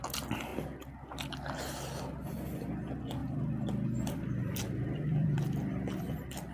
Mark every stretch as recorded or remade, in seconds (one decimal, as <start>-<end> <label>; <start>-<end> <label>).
0.0-3.2 recorded; 3.2-6.5 remade